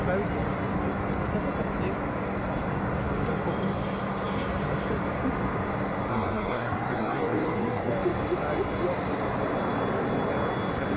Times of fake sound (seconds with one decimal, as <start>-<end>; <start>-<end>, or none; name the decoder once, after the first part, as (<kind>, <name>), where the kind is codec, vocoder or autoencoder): 6.1-7.9 (codec, SNAC)